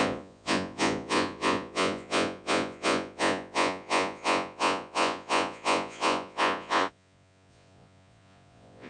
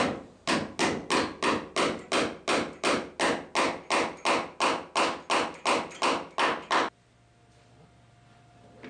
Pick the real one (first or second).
second